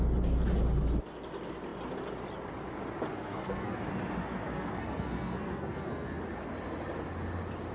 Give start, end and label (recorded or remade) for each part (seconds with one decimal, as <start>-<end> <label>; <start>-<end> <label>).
0.0-3.1 recorded; 3.1-3.8 remade; 3.8-4.2 recorded; 4.2-6.2 remade; 6.2-7.7 recorded